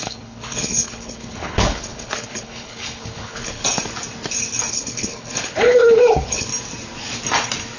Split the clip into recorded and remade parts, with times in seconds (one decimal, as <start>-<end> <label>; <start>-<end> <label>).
0.0-3.6 remade; 3.6-4.7 recorded; 4.7-6.5 remade; 6.5-7.8 recorded